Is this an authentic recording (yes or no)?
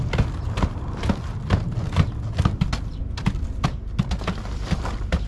yes